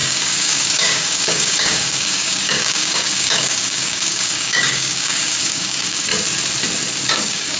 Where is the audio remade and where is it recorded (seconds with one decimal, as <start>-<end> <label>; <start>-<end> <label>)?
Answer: 0.0-6.1 remade; 6.1-7.1 recorded; 7.1-7.6 remade

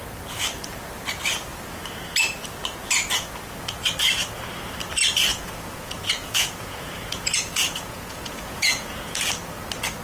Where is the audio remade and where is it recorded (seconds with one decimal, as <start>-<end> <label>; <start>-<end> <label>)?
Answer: 0.0-5.3 recorded; 5.3-9.3 remade; 9.3-10.0 recorded

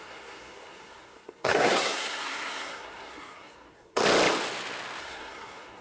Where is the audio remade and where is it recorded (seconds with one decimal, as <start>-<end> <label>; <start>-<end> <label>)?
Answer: 0.0-4.0 remade; 4.0-5.0 recorded; 5.0-5.8 remade

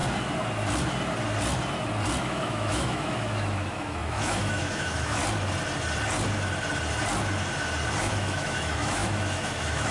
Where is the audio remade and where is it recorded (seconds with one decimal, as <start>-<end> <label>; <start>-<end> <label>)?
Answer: 0.0-2.2 recorded; 2.2-5.2 remade; 5.2-8.0 recorded; 8.0-9.9 remade

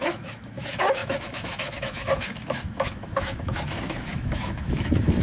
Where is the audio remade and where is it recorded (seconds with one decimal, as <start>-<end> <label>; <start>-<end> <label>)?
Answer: 0.0-5.2 remade